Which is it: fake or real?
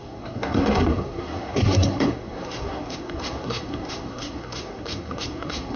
fake